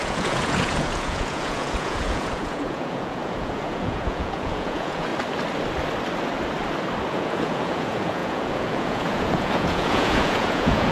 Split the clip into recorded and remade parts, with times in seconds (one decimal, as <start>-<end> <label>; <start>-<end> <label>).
0.0-5.1 remade; 5.1-7.1 recorded; 7.1-10.9 remade